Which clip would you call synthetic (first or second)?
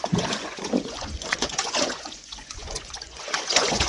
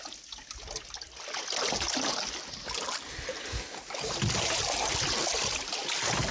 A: first